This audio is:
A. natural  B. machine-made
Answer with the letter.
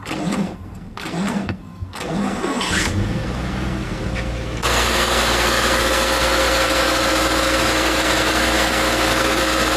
B